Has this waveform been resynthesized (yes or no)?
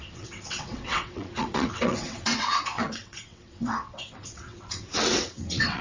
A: yes